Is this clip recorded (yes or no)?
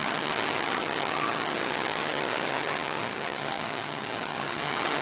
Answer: no